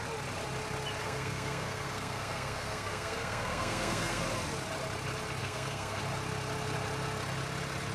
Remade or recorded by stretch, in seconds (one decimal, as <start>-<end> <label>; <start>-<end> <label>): 0.0-1.0 recorded; 1.0-4.2 remade; 4.2-5.4 recorded; 5.4-6.0 remade; 6.0-7.9 recorded